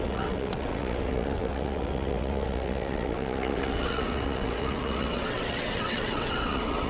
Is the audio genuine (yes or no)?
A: no